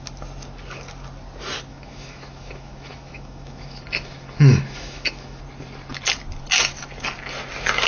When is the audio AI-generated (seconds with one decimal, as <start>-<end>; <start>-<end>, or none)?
1.7-5.4